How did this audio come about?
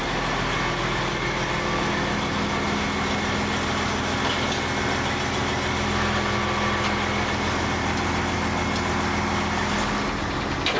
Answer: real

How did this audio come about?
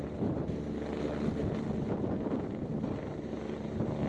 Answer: real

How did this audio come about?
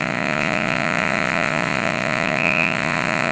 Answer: fake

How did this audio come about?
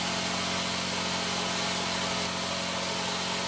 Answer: real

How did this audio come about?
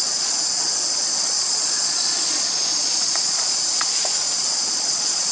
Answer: fake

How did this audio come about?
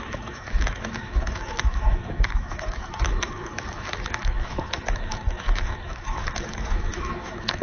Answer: fake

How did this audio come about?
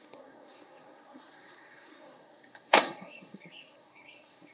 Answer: fake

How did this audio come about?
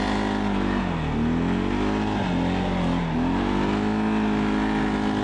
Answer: real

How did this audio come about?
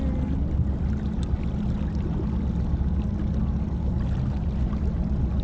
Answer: real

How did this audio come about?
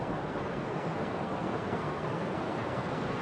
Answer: fake